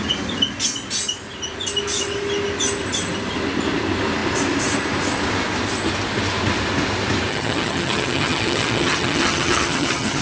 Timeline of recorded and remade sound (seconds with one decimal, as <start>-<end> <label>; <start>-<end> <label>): 0.0-7.3 recorded; 7.3-10.2 remade